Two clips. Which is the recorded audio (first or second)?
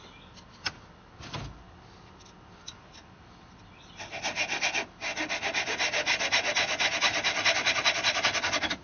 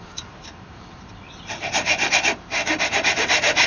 first